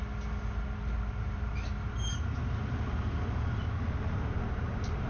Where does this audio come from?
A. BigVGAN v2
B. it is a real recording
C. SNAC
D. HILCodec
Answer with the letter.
B